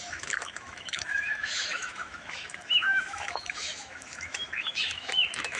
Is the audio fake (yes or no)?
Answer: yes